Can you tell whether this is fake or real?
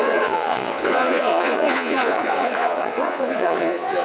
fake